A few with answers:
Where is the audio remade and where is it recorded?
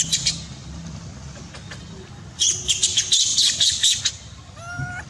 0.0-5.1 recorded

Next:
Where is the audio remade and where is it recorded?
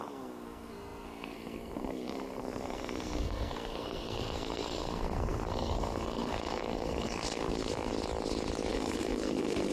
0.0-7.9 remade; 7.9-8.7 recorded; 8.7-9.7 remade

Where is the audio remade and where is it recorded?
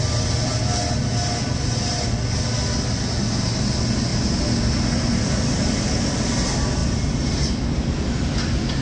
0.0-8.8 recorded